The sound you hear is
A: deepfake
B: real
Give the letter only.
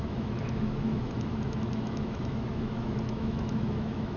A